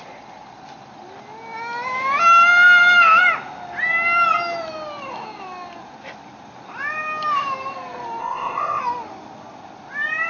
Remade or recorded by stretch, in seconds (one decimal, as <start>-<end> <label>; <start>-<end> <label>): 0.0-8.2 recorded; 8.2-8.8 remade; 8.8-10.3 recorded